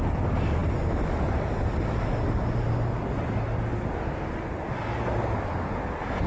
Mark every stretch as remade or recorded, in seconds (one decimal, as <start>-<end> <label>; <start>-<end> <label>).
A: 0.0-6.3 recorded